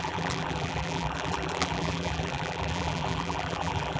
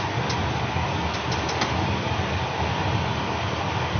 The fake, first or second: first